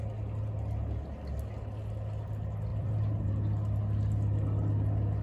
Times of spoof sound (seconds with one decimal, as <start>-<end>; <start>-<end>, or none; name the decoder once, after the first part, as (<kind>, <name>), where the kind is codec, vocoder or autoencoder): 2.7-3.3 (vocoder, BigVGAN v2)